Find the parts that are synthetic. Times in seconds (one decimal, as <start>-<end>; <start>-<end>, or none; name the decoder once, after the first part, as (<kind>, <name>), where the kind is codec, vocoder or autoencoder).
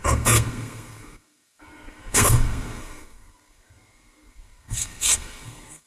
0.0-5.9 (codec, SNAC)